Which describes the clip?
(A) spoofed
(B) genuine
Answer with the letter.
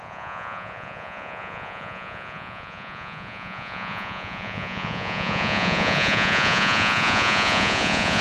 A